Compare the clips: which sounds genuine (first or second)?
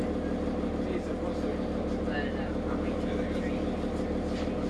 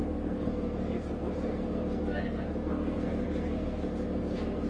first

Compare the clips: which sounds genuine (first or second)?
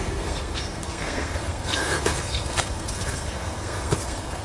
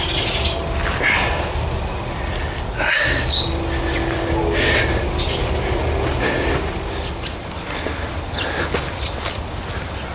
second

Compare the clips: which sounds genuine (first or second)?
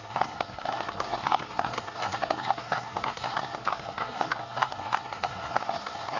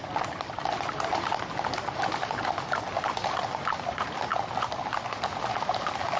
second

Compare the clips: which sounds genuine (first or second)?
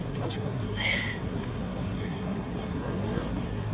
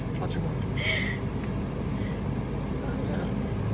second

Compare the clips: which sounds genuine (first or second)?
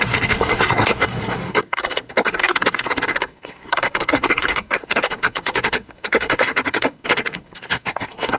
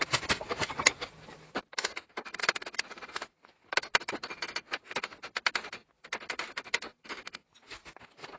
second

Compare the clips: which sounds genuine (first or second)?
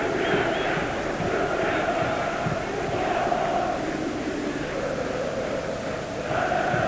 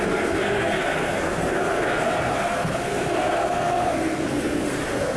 first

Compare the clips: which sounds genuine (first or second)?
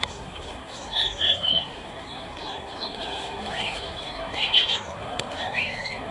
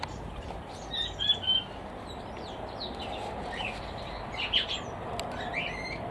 second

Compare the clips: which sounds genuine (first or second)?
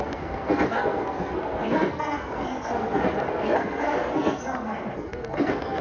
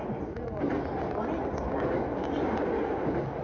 second